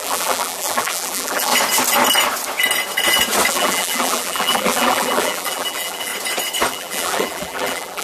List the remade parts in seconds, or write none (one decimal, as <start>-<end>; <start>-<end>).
0.0-1.5; 3.5-6.1; 6.7-8.0